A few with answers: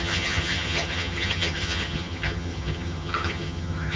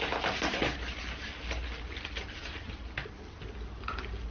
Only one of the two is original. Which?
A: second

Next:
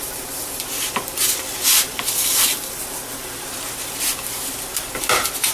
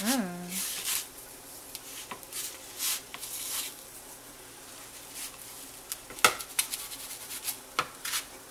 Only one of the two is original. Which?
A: second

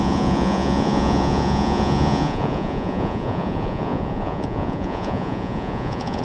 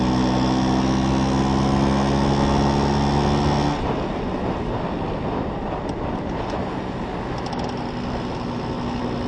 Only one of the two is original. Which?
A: second